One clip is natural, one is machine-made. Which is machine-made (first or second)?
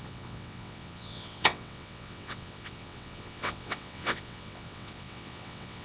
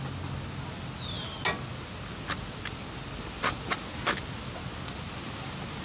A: first